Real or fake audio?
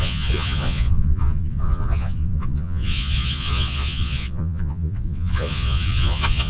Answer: fake